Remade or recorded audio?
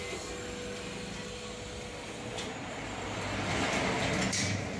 recorded